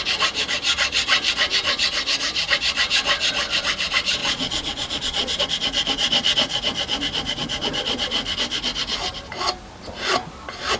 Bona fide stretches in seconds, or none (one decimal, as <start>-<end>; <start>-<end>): 0.0-4.2; 5.4-10.8